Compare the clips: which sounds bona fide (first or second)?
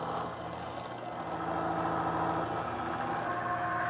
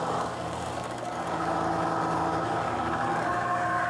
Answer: first